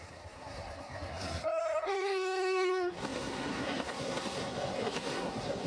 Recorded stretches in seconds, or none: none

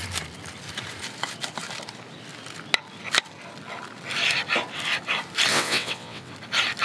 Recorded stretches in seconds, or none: 0.0-5.5; 6.3-6.8

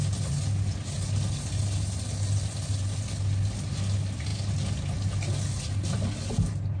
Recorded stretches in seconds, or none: 0.0-6.8

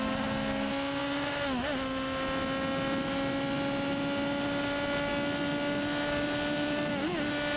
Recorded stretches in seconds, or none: 0.0-7.6

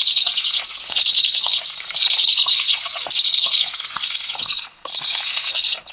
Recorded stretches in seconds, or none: none

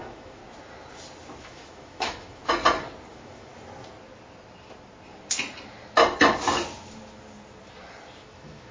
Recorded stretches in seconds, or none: 0.4-1.4; 2.4-3.1; 3.5-8.2

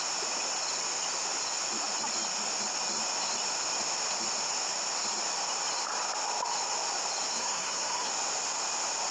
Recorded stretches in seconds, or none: 0.0-7.3; 8.1-9.1

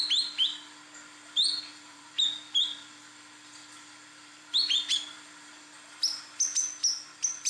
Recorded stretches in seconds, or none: 0.0-1.7; 6.0-7.5